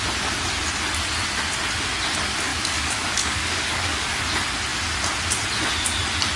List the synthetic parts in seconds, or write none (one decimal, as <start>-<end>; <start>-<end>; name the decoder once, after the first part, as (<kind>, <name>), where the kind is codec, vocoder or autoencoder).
2.5-4.2 (codec, DAC)